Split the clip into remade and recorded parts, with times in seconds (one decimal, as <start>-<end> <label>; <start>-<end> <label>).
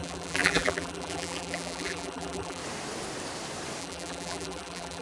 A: 0.0-2.6 remade; 2.6-3.8 recorded; 3.8-5.0 remade